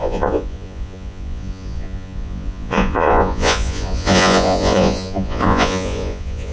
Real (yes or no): no